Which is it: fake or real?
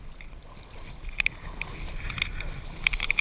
real